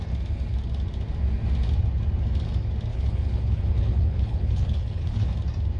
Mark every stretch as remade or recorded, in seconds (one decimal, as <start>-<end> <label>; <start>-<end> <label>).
0.0-2.9 recorded; 2.9-5.3 remade; 5.3-5.8 recorded